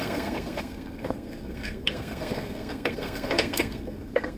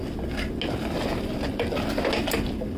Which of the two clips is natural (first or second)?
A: second